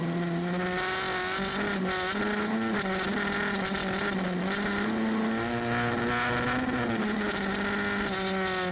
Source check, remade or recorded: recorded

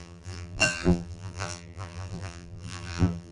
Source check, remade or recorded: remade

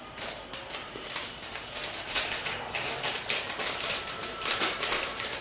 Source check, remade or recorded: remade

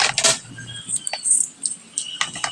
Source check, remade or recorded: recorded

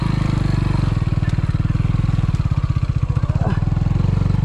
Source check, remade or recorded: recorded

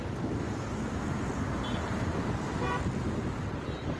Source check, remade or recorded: recorded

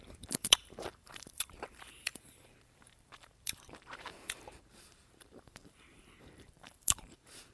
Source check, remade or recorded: remade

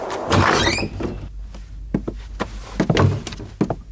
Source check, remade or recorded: recorded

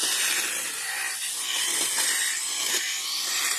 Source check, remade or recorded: recorded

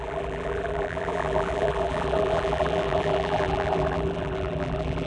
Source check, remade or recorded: remade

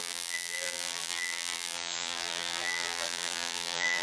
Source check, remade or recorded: remade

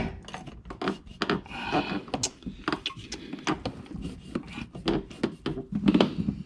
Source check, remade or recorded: recorded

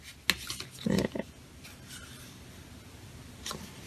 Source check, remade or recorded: recorded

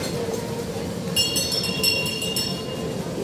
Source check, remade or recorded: recorded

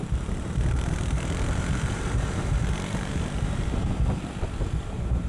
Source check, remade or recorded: remade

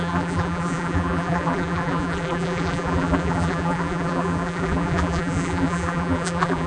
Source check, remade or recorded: remade